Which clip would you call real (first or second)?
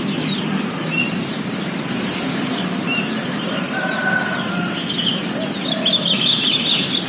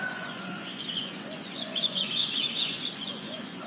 first